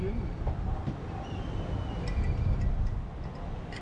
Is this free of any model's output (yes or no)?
yes